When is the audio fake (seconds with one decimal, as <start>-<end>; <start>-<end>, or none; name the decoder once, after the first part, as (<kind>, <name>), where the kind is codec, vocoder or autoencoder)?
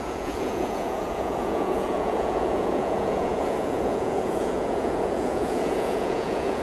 0.0-6.6 (vocoder, Vocos)